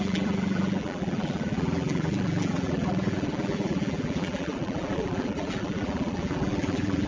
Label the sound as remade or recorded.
remade